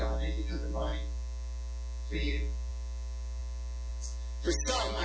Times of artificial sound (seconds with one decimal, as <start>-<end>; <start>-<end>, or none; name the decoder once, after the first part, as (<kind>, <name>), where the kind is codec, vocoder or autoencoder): none